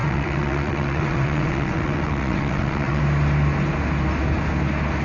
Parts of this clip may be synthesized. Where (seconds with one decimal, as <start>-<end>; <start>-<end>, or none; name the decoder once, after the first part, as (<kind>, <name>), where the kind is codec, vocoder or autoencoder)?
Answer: 0.0-3.0 (vocoder, WaveNeXt)